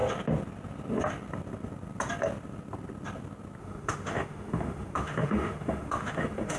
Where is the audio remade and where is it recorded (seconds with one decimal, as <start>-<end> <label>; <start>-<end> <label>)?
0.0-3.6 recorded; 3.6-6.6 remade